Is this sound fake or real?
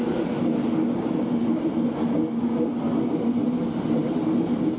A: real